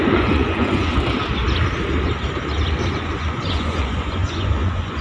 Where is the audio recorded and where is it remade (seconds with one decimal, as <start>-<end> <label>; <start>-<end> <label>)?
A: 0.0-0.9 remade; 0.9-2.9 recorded; 2.9-5.0 remade